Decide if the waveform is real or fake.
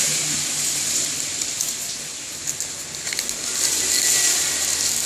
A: real